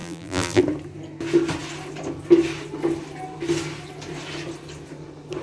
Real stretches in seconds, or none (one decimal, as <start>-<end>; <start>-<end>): 0.6-5.4